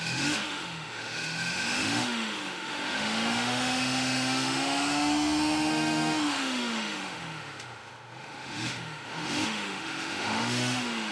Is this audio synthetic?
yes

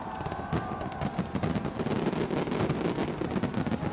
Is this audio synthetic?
no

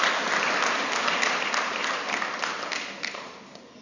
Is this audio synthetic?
no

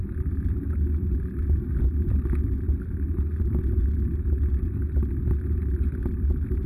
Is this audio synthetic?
no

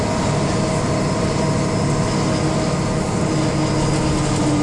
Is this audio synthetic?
no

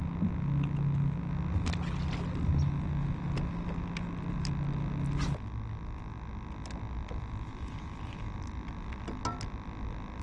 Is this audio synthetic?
no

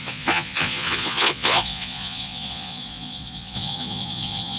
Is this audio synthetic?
yes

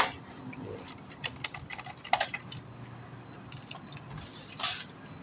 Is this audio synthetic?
no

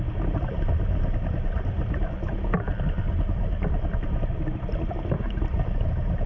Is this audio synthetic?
no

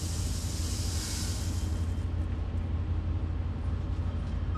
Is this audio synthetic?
no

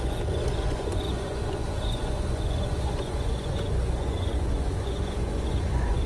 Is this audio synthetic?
yes